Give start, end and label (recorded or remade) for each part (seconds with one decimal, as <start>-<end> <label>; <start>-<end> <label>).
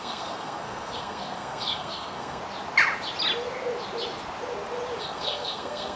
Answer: 0.0-2.4 remade; 2.4-5.0 recorded; 5.0-6.0 remade